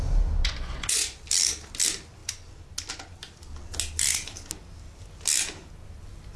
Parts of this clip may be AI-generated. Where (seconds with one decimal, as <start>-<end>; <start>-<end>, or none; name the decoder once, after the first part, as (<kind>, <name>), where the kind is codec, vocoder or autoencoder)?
0.4-1.2 (vocoder, Vocos)